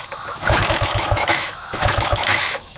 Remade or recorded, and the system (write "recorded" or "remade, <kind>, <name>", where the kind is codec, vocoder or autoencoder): remade, autoencoder, DAC-VAE